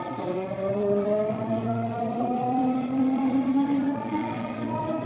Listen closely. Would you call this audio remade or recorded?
remade